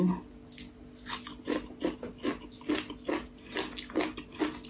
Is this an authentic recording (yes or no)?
yes